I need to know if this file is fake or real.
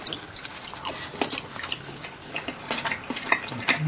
real